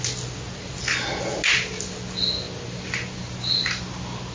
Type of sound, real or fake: real